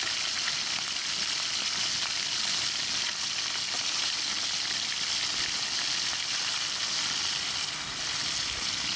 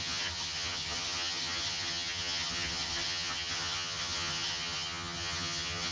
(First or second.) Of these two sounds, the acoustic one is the first